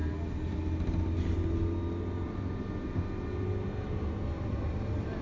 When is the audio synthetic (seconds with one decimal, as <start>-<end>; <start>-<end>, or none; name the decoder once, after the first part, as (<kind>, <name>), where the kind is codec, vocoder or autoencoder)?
none